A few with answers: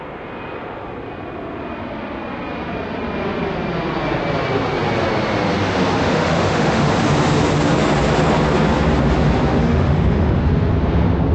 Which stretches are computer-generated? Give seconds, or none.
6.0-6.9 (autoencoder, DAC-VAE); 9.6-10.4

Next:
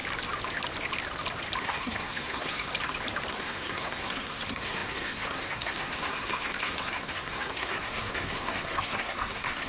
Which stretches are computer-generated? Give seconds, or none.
1.6-2.7 (codec, SNAC); 3.3-9.7

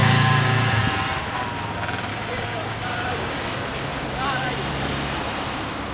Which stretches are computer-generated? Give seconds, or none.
0.0-0.8 (codec, DAC); 2.1-3.4

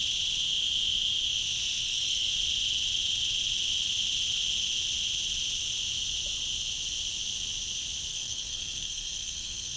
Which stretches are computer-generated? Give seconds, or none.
1.8-2.3 (codec, SNAC); 8.1-9.8

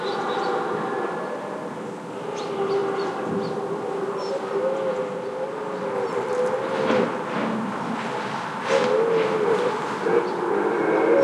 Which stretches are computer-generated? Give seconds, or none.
none

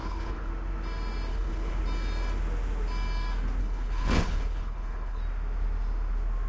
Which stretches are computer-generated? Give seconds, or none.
0.0-0.5 (codec, HILCodec); 1.3-1.8; 3.6-5.2

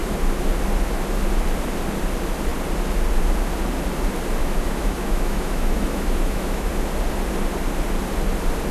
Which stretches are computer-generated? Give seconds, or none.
4.4-6.7 (autoencoder, DAC-VAE)

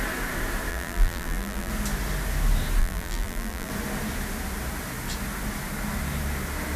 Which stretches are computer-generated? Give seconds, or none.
0.7-1.7 (vocoder, BigVGAN v2); 2.8-3.7